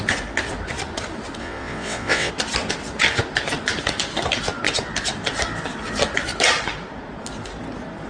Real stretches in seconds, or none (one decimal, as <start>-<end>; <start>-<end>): 0.0-1.4; 2.3-8.1